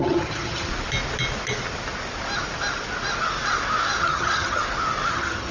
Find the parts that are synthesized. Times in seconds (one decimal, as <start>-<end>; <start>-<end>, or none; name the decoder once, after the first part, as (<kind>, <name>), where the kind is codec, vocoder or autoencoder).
0.0-0.7 (vocoder, HiFi-GAN); 4.0-4.6; 5.1-5.5